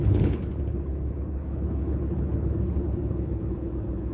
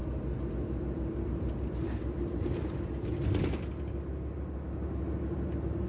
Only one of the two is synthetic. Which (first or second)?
first